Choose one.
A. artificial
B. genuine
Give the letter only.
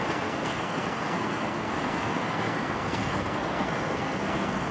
A